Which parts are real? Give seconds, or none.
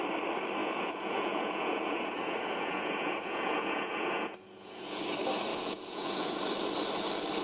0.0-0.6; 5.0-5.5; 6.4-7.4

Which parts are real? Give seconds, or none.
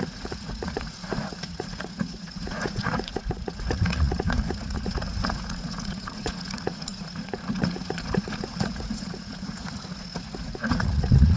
none